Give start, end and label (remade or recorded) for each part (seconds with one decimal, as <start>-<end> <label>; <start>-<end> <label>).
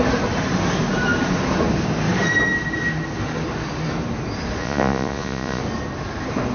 0.0-4.6 recorded; 4.6-5.6 remade; 5.6-6.5 recorded